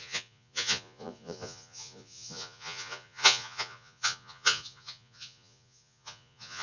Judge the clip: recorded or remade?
remade